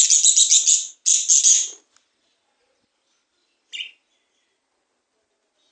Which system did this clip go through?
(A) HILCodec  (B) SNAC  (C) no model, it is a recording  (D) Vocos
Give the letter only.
C